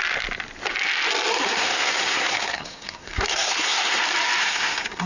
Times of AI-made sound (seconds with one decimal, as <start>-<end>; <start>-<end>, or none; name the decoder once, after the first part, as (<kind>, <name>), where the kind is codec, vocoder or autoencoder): 1.3-4.0 (codec, SNAC); 4.4-5.1

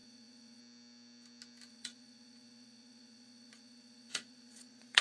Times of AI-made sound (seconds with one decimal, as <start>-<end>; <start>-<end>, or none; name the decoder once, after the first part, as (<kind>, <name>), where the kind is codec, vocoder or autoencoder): 0.0-0.6 (vocoder, Vocos); 1.7-5.0

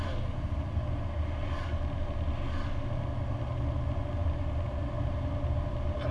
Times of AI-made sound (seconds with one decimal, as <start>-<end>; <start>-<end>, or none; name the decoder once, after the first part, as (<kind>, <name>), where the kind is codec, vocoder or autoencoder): none

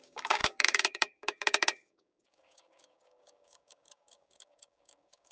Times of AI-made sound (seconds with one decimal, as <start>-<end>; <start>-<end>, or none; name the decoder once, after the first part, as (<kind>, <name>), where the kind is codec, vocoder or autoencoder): 0.0-5.3 (codec, DAC)

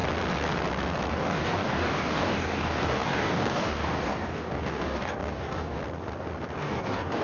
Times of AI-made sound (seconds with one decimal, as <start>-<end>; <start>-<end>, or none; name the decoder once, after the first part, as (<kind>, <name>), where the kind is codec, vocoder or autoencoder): 1.1-5.8 (codec, DAC); 6.6-7.2